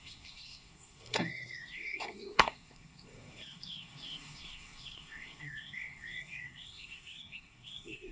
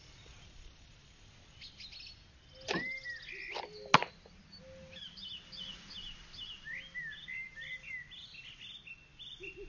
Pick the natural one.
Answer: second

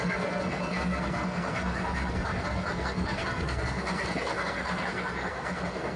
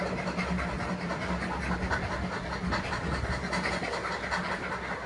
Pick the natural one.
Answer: second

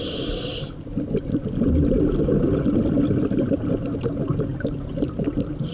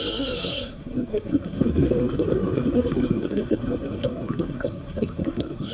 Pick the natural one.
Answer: first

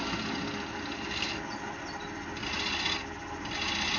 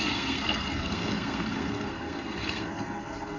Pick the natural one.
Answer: first